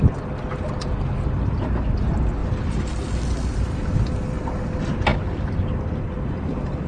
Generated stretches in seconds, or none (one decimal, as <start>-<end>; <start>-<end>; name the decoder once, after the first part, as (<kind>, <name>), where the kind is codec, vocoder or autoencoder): 2.4-2.9 (vocoder, BigVGAN v2); 5.1-6.9